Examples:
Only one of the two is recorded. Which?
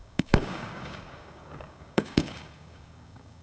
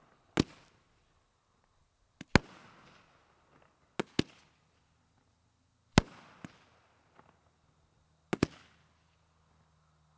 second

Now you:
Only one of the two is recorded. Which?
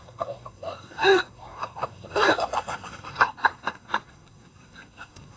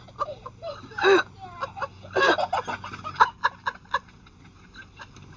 second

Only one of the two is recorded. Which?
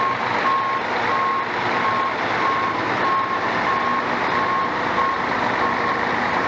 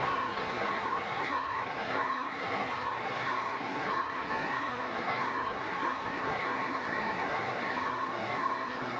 first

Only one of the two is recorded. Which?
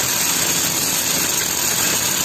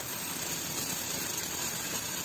first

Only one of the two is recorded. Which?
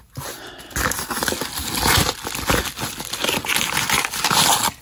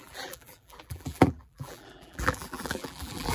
first